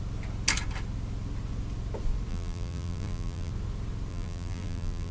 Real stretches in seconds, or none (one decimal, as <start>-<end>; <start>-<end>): 0.0-2.3; 3.5-4.1